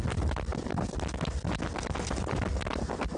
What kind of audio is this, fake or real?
real